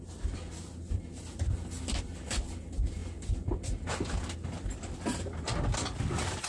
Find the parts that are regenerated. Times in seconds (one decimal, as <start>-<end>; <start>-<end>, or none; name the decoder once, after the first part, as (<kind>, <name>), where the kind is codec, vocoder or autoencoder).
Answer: none